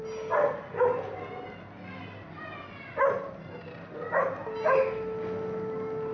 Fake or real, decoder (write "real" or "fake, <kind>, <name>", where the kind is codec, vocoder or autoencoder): real